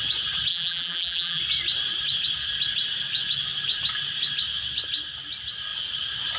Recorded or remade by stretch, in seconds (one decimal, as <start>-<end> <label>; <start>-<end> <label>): 0.0-0.5 recorded; 0.5-1.4 remade; 1.4-6.4 recorded